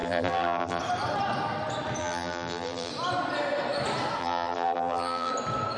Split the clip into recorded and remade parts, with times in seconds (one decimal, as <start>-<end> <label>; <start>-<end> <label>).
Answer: 0.0-0.8 remade; 0.8-2.0 recorded; 2.0-2.9 remade; 2.9-4.2 recorded; 4.2-5.3 remade; 5.3-5.8 recorded